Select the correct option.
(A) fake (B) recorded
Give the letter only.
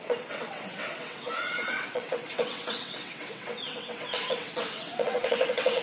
A